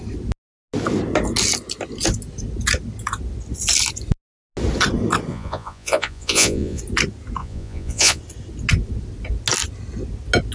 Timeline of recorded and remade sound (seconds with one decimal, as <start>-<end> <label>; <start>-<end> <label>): 0.0-5.3 recorded; 5.3-6.8 remade; 6.8-7.4 recorded; 7.4-8.2 remade; 8.2-10.5 recorded